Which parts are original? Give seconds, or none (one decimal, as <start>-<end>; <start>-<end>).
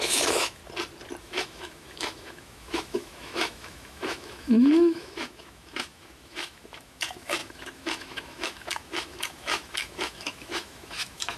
0.6-1.2